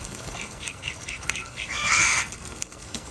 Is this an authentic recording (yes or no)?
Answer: no